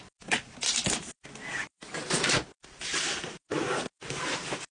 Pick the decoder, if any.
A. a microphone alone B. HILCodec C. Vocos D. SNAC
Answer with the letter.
A